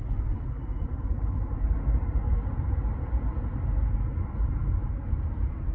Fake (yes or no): no